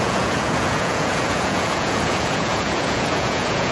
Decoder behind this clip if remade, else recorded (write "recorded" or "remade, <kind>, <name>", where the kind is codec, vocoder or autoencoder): remade, vocoder, Vocos